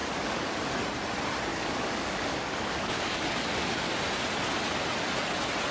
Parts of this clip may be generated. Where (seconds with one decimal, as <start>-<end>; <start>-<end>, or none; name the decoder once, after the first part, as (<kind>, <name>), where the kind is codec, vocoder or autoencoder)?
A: 0.0-0.5 (codec, DAC); 1.5-3.9